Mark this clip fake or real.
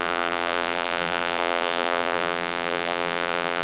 fake